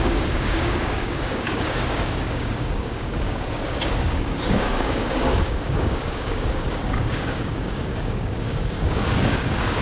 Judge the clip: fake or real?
fake